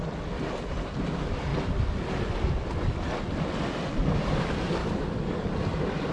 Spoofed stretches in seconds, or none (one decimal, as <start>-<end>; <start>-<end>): 4.8-5.5